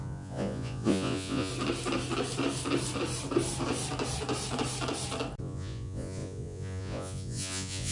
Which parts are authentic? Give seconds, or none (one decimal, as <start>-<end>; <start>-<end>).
1.5-5.4